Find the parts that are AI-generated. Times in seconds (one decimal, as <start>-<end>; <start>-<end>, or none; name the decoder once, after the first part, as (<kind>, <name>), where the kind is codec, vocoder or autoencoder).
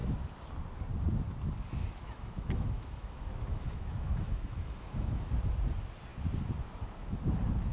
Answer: 1.8-5.3 (autoencoder, DAC-VAE)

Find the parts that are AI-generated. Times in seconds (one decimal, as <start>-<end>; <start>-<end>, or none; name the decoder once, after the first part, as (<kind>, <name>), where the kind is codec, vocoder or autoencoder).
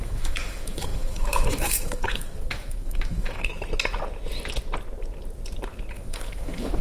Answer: 0.0-3.5 (autoencoder, DAC-VAE); 5.9-6.8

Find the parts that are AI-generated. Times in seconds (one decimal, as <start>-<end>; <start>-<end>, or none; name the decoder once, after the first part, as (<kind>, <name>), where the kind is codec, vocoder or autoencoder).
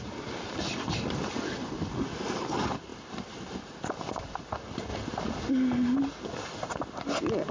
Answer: none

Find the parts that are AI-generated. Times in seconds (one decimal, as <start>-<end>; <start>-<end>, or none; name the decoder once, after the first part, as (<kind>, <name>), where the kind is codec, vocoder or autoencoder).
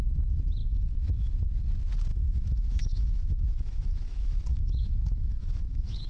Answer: 0.6-1.3 (autoencoder, DAC-VAE); 2.1-6.1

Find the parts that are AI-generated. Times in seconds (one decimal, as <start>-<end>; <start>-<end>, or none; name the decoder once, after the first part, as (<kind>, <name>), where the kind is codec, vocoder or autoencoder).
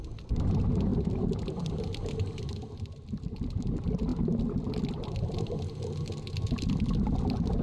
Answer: none